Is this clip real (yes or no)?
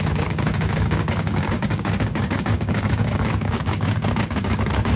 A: no